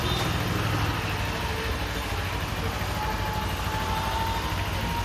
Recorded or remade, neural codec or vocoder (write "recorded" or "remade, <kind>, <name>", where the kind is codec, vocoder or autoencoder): recorded